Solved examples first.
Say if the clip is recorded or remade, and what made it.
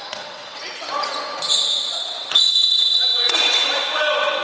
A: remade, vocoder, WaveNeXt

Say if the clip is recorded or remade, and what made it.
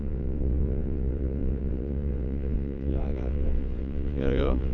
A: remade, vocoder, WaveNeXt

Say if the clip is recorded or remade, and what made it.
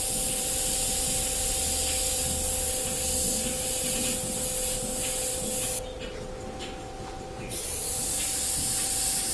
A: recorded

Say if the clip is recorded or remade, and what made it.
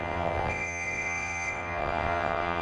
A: remade, vocoder, WaveNeXt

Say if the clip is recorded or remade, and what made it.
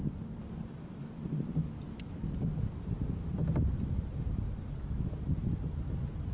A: recorded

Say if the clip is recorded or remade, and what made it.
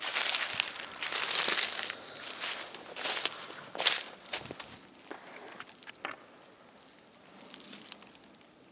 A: recorded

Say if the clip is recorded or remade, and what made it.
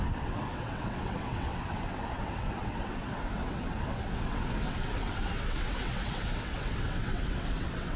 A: remade, vocoder, WaveNeXt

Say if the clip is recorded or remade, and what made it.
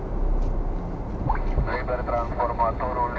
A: recorded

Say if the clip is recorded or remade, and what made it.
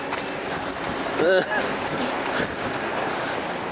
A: recorded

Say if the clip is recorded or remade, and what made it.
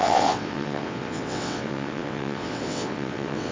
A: remade, vocoder, WaveNeXt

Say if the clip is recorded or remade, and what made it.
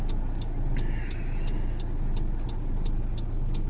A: recorded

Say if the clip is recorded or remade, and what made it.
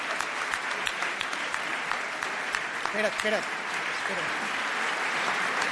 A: recorded